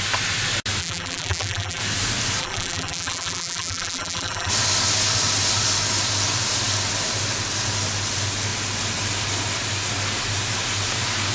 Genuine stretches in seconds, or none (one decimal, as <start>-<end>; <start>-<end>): 0.0-0.8; 1.8-2.4; 4.5-11.3